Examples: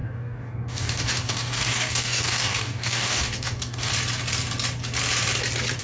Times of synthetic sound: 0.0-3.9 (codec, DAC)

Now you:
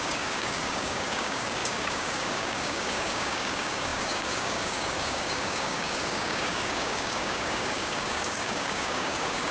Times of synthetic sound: 0.0-9.5 (codec, DAC)

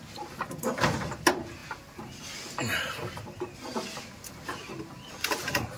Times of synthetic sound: none